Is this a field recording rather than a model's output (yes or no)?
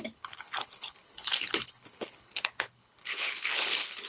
no